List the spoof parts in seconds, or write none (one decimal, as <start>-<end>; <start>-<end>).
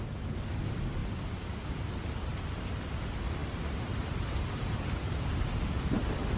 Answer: none